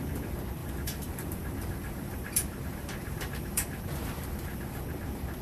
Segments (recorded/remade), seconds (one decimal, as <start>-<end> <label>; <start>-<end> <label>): 0.0-0.6 recorded; 0.6-3.8 remade; 3.8-5.4 recorded